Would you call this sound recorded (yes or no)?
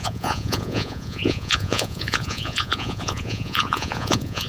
no